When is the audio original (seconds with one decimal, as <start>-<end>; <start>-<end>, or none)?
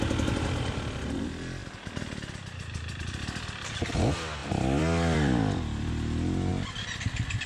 0.0-1.6; 3.9-4.4; 5.9-7.5